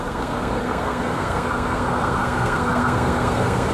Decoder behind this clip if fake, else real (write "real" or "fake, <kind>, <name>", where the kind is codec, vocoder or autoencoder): fake, codec, SNAC